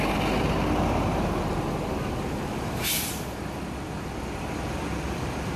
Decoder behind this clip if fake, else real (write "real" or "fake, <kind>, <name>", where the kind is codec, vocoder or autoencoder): real